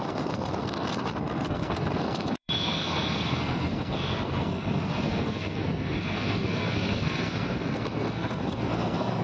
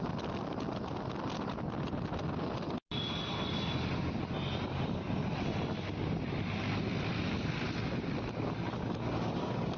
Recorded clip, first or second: second